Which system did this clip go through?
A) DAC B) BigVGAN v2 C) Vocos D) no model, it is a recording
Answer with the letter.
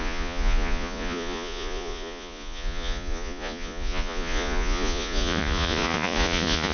C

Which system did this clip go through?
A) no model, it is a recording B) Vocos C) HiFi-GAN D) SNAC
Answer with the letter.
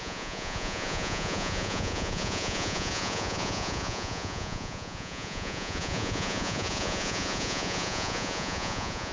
B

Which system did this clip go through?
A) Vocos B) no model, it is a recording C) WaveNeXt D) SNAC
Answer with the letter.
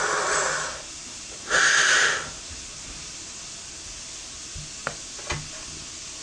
B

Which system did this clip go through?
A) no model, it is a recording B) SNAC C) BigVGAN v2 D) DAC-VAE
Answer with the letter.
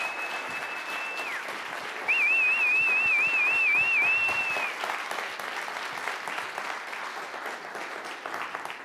A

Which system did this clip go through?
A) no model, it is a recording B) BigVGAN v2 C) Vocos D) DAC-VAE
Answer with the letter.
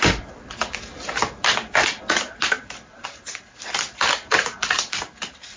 B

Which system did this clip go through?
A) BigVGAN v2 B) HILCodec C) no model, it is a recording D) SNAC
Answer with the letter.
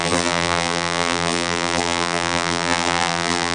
A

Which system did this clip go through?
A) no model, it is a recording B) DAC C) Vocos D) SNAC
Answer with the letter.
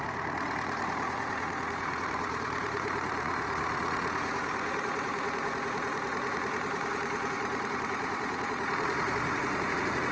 C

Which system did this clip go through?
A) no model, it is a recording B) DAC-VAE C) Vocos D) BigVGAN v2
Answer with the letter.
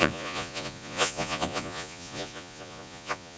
C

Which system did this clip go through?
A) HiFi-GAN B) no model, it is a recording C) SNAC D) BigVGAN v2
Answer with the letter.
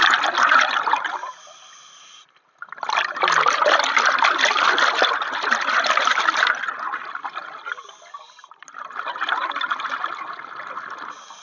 B